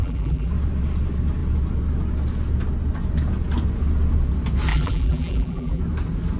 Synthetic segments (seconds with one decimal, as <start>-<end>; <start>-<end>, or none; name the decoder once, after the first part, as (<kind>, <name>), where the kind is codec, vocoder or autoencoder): 0.0-0.5 (vocoder, BigVGAN v2); 4.7-5.8